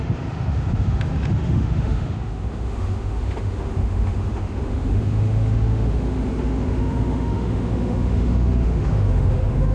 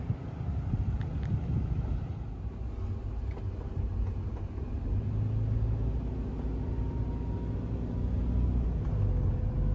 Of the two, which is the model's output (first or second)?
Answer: first